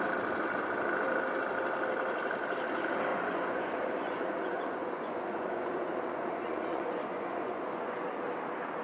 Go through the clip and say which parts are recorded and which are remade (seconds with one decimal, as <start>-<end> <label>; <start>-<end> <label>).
0.0-3.1 recorded; 3.1-8.0 remade; 8.0-8.8 recorded